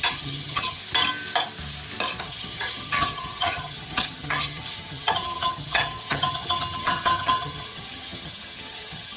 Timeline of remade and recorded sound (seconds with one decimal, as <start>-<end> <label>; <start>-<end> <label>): 0.0-0.8 remade; 0.8-2.2 recorded; 2.2-9.2 remade